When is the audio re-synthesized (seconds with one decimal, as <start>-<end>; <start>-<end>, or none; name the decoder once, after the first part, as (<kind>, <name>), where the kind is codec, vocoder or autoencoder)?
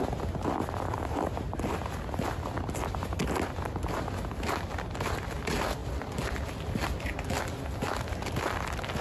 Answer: none